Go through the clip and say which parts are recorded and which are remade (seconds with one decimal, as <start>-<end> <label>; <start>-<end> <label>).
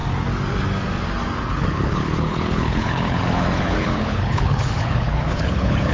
0.0-1.5 recorded; 1.5-5.9 remade